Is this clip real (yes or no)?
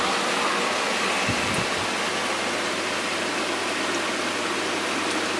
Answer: yes